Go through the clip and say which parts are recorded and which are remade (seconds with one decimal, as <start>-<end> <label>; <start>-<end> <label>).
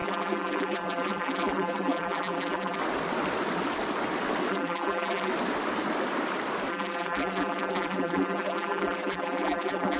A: 0.0-2.8 remade; 2.8-4.5 recorded; 4.5-5.3 remade; 5.3-6.7 recorded; 6.7-10.0 remade